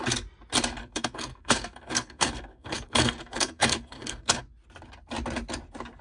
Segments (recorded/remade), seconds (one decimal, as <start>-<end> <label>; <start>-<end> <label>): 0.0-0.8 recorded; 0.8-4.4 remade; 4.4-6.0 recorded